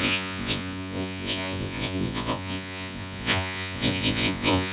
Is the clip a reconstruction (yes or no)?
yes